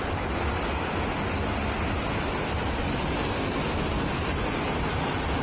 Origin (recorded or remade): recorded